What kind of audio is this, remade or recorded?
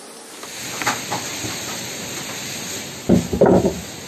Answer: recorded